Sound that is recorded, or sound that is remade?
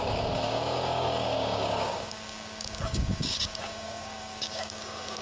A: remade